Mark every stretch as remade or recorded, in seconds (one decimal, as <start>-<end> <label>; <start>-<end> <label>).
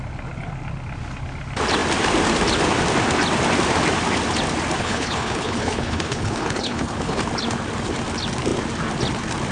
0.0-4.8 recorded; 4.8-7.2 remade; 7.2-9.5 recorded